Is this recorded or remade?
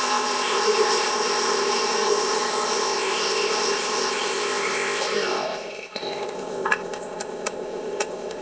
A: remade